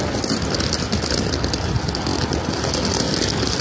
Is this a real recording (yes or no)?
yes